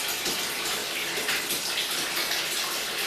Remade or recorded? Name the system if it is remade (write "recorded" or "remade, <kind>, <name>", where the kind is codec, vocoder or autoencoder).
recorded